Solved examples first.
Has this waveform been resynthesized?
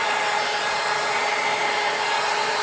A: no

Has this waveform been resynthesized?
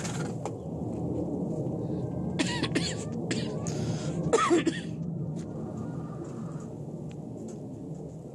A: no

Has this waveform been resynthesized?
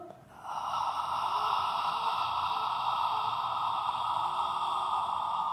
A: no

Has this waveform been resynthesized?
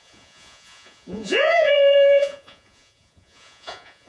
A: yes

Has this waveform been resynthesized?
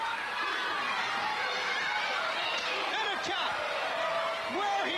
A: yes